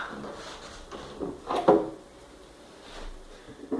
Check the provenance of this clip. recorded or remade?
recorded